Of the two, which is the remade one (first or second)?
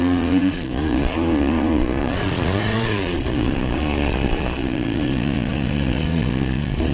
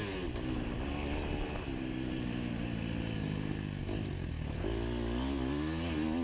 first